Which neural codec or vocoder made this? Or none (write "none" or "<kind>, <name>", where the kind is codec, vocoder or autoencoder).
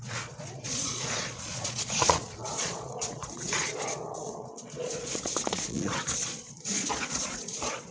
vocoder, Vocos